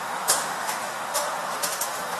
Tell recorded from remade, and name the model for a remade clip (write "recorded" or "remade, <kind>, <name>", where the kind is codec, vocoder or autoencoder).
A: remade, autoencoder, DAC-VAE